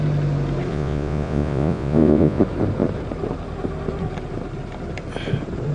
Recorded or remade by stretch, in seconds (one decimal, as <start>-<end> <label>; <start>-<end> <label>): 0.0-0.7 recorded; 0.7-2.4 remade; 2.4-5.7 recorded